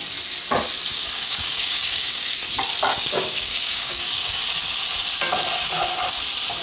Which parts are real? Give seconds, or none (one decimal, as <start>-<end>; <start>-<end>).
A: 0.0-0.9; 2.3-2.9; 4.4-6.6